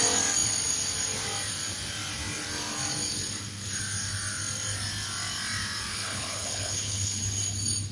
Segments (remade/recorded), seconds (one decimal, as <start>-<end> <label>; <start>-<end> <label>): 0.0-5.9 recorded; 5.9-7.2 remade; 7.2-7.9 recorded